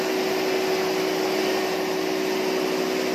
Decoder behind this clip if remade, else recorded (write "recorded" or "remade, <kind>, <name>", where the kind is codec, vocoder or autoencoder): recorded